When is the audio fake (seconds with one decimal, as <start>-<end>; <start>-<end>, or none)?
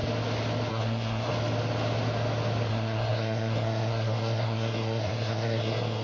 0.7-1.3; 2.7-6.0